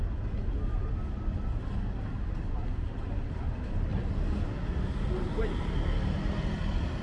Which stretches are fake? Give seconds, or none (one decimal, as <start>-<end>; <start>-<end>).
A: none